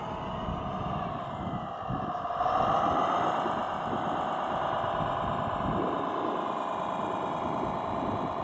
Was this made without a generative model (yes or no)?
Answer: yes